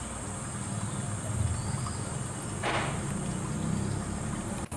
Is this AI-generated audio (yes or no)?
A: no